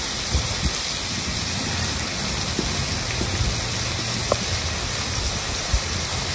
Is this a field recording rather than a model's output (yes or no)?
yes